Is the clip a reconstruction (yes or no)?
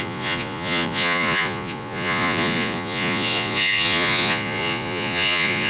yes